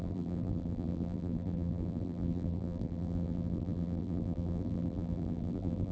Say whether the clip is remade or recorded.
remade